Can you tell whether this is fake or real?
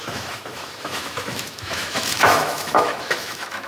fake